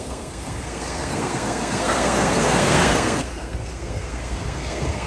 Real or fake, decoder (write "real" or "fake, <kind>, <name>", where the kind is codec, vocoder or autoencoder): fake, codec, SNAC